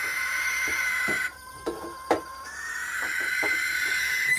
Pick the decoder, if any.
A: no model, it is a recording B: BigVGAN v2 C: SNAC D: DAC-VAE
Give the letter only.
B